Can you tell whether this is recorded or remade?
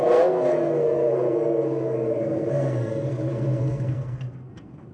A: remade